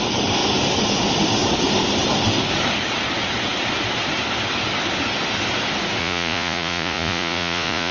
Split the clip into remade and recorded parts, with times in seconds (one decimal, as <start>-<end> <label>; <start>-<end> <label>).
0.0-6.0 recorded; 6.0-7.9 remade